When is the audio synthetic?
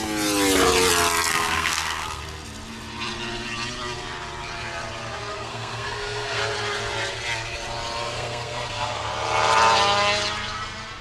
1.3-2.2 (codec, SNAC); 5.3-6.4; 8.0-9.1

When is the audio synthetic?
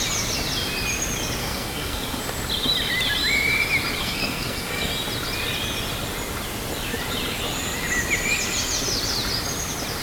1.4-2.2 (codec, SNAC); 4.0-4.9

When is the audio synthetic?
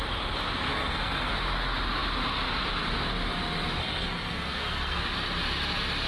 0.7-1.3 (codec, SNAC); 3.8-5.0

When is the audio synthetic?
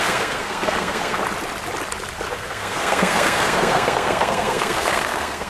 0.0-1.2 (codec, SNAC); 2.3-5.5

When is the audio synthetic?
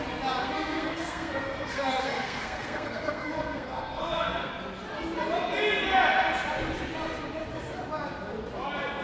0.4-4.5 (codec, SNAC)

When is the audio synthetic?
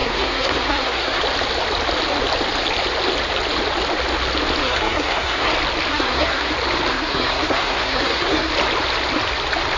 0.0-1.2 (codec, SNAC); 4.6-5.5; 5.9-6.5; 6.9-8.5